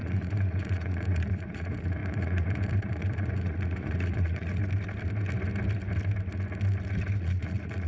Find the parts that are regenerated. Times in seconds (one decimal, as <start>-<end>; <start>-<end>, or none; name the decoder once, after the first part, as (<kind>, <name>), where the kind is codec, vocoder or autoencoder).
0.0-4.6 (vocoder, Vocos); 7.2-7.9